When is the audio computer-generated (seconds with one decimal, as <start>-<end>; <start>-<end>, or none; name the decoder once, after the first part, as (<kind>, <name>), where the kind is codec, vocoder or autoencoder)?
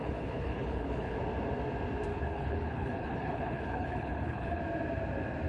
0.0-1.2 (codec, HILCodec); 2.1-4.6